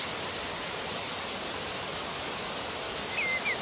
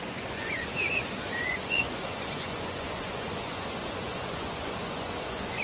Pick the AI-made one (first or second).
second